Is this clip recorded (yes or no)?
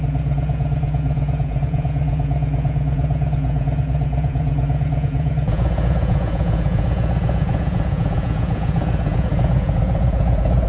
no